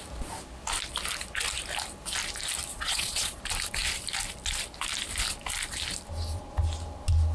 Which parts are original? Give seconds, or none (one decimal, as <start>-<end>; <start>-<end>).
0.0-2.7; 3.4-7.3